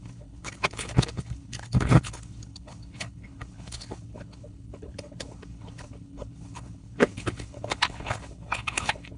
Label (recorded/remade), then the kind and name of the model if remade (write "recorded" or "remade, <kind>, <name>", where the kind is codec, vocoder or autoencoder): remade, codec, HILCodec